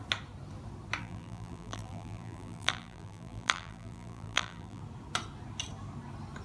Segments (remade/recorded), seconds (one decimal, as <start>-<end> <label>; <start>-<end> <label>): 0.0-1.0 recorded; 1.0-4.8 remade; 4.8-6.4 recorded